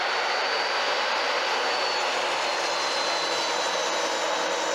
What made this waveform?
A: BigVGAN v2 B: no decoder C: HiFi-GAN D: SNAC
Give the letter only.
B